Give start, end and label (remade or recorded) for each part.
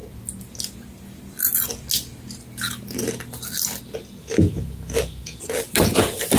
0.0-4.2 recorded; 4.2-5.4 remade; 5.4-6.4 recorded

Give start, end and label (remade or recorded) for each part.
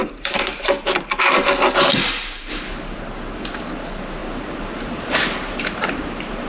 0.0-1.5 remade; 1.5-6.5 recorded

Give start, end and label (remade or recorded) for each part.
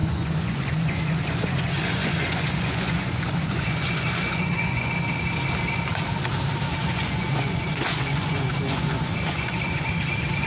0.0-4.9 remade; 4.9-6.8 recorded; 6.8-9.9 remade; 9.9-10.5 recorded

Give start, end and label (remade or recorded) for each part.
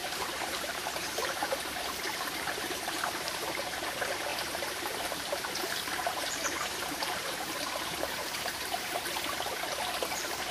0.0-3.5 remade; 3.5-4.3 recorded; 4.3-9.0 remade; 9.0-10.5 recorded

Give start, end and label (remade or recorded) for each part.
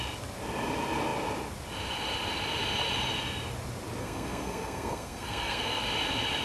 0.0-4.0 recorded; 4.0-5.8 remade; 5.8-6.4 recorded